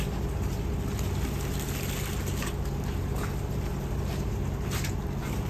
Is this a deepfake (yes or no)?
no